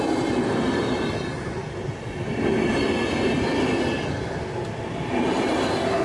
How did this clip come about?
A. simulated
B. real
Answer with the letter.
B